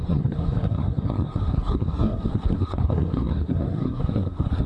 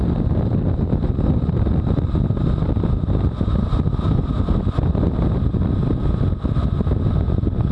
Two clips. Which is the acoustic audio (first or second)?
second